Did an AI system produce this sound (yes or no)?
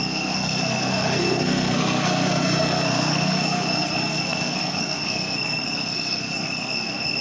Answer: yes